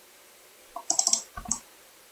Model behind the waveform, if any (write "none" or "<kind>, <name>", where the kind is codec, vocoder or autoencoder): vocoder, BigVGAN v2